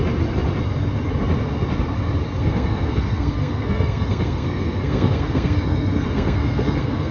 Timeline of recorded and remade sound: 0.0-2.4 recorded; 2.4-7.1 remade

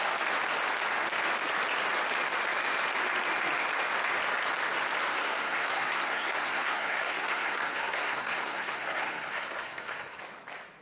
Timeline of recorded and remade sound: 0.0-5.1 recorded; 5.1-10.2 remade; 10.2-10.8 recorded

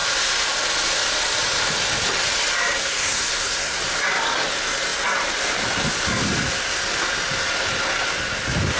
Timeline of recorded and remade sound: 0.0-2.8 recorded; 2.8-3.8 remade; 3.8-8.8 recorded

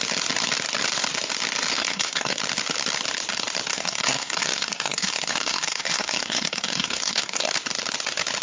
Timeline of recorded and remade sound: 0.0-1.7 recorded; 1.7-2.4 remade; 2.4-3.7 recorded; 3.7-7.5 remade; 7.5-8.4 recorded

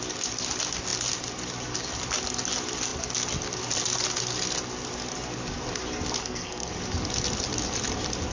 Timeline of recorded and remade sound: 0.0-6.2 recorded; 6.2-6.7 remade; 6.7-8.3 recorded

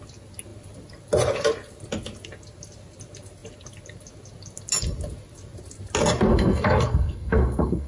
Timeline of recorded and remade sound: 0.0-6.3 recorded; 6.3-7.9 remade

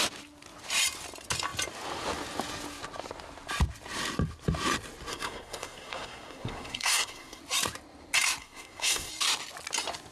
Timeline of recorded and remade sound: 0.0-5.1 recorded; 5.1-7.4 remade; 7.4-8.4 recorded; 8.4-9.1 remade; 9.1-10.1 recorded

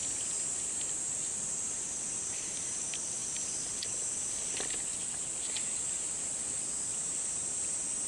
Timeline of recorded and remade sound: 0.0-8.1 recorded